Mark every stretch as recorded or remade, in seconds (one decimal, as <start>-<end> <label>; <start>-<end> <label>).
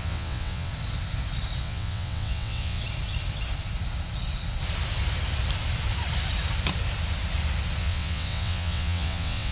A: 0.0-0.7 remade; 0.7-1.6 recorded; 1.6-2.8 remade; 2.8-7.8 recorded; 7.8-9.5 remade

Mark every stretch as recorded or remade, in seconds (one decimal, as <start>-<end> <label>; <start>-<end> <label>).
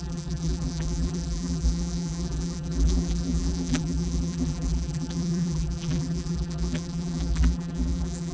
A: 0.0-8.3 remade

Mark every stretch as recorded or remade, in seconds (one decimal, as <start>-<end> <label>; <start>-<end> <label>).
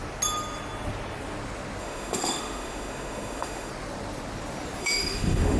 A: 0.0-1.8 recorded; 1.8-3.7 remade; 3.7-4.8 recorded; 4.8-5.6 remade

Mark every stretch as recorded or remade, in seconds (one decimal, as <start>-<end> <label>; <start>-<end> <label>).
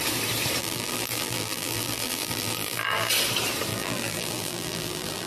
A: 0.0-0.6 recorded; 0.6-3.1 remade; 3.1-3.7 recorded; 3.7-5.3 remade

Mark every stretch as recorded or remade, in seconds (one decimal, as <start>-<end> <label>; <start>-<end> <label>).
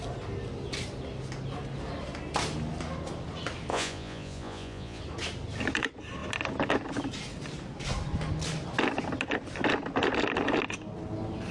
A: 0.0-3.7 recorded; 3.7-5.0 remade; 5.0-11.5 recorded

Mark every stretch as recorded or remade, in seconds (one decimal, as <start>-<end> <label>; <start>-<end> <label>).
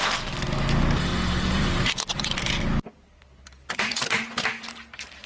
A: 0.0-5.3 recorded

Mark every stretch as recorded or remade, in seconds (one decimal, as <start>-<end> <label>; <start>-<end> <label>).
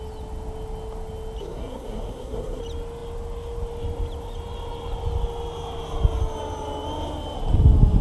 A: 0.0-1.4 recorded; 1.4-2.6 remade; 2.6-8.0 recorded